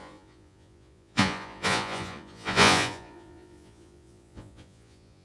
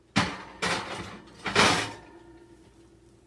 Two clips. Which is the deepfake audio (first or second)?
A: first